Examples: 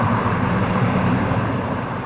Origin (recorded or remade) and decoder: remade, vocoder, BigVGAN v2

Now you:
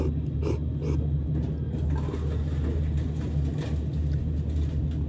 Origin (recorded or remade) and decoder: recorded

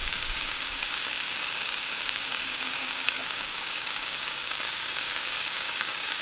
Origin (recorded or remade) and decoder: remade, codec, DAC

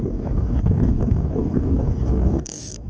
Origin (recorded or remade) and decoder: remade, codec, DAC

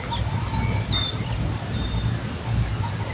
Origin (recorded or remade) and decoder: recorded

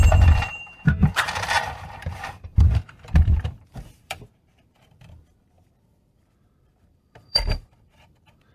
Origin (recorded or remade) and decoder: remade, vocoder, BigVGAN v2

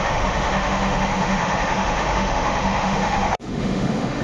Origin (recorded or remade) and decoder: remade, autoencoder, DAC-VAE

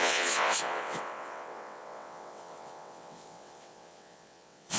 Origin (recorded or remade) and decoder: remade, vocoder, WaveNeXt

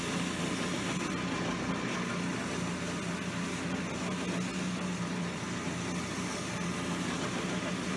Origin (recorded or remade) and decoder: recorded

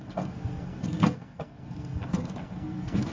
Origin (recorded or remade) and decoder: remade, codec, SNAC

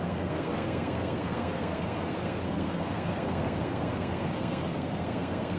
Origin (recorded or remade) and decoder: remade, codec, SNAC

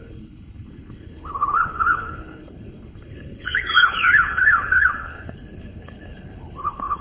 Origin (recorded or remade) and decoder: remade, codec, HILCodec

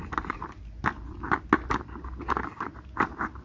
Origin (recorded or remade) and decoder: recorded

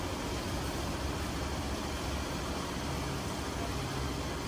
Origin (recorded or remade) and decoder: recorded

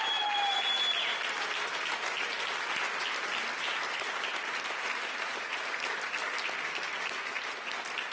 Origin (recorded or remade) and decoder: recorded